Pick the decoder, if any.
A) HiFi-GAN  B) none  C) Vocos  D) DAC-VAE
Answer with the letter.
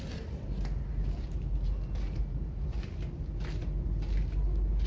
B